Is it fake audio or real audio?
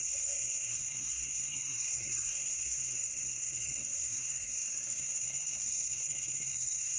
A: fake